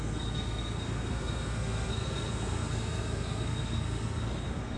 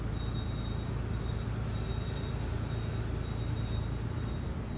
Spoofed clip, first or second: first